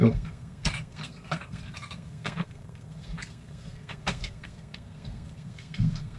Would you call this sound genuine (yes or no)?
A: no